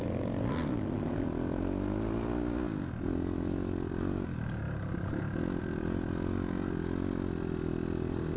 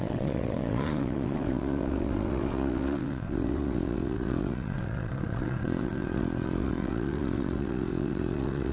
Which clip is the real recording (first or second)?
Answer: first